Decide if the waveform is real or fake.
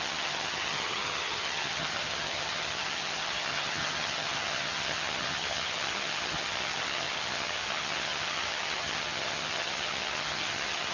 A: fake